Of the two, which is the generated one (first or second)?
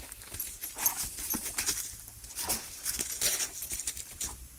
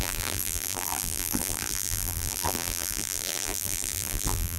second